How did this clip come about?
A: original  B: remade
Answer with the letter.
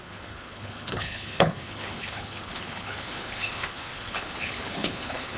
B